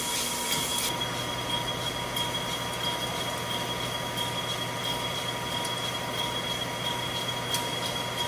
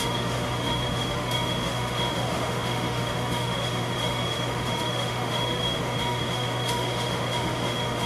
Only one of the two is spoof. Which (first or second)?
second